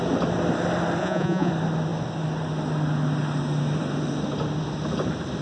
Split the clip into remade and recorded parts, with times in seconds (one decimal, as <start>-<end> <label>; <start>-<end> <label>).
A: 0.0-1.0 recorded; 1.0-1.5 remade; 1.5-5.4 recorded